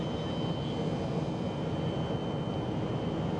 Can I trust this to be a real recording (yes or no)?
yes